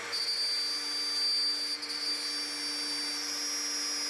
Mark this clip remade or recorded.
recorded